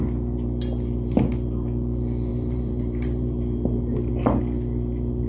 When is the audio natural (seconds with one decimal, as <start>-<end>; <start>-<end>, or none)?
0.0-2.3; 4.1-5.3